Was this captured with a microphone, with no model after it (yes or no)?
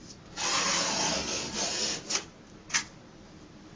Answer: yes